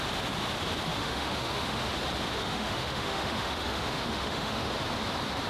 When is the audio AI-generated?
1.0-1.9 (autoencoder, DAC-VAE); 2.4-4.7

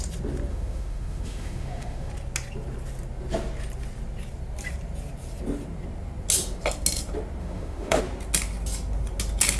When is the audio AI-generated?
0.5-2.1 (autoencoder, DAC-VAE); 7.4-8.0